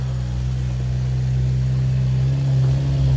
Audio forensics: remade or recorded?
recorded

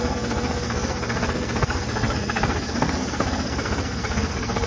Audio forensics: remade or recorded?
remade